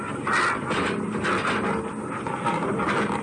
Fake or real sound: real